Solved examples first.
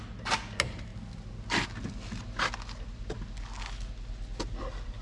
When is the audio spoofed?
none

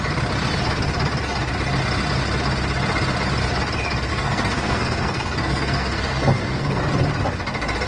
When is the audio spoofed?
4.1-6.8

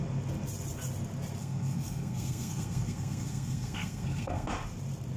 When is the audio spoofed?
1.4-4.5